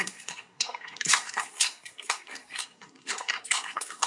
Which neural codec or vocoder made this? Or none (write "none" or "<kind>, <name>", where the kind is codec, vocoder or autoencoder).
codec, SNAC